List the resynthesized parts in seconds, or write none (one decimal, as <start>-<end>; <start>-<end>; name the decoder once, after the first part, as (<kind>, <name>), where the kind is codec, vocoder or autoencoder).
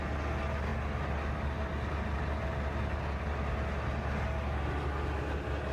none